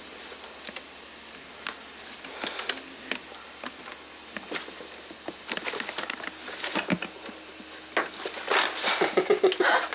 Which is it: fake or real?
real